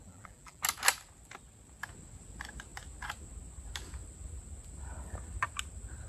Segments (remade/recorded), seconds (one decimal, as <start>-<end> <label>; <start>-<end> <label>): 0.0-0.6 remade; 0.6-6.1 recorded